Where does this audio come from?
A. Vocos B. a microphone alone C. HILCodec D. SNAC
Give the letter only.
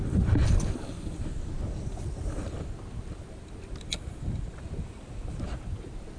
B